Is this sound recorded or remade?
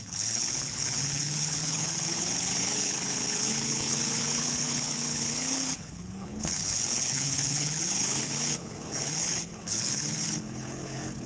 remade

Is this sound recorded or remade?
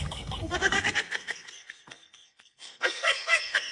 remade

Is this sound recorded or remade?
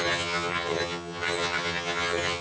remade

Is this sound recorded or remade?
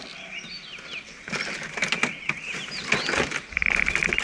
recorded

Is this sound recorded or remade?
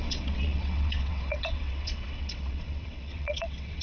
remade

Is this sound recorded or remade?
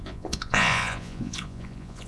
remade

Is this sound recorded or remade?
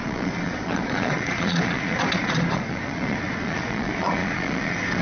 remade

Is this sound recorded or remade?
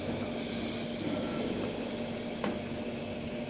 recorded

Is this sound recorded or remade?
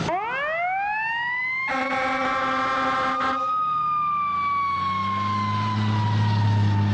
recorded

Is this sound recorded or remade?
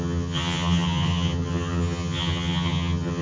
remade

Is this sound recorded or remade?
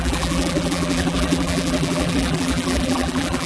remade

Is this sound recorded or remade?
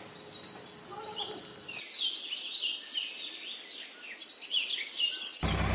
recorded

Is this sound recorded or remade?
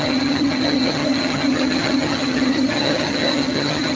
remade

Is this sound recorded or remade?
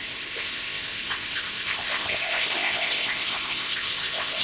remade